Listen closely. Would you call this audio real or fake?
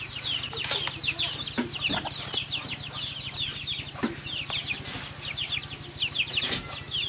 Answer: real